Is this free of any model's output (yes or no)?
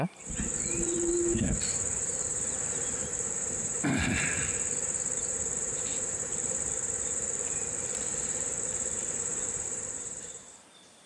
no